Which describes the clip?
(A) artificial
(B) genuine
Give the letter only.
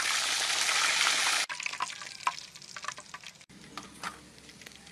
B